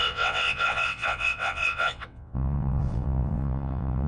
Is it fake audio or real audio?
fake